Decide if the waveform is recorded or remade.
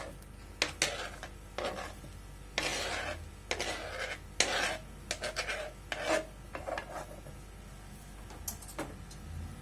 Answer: recorded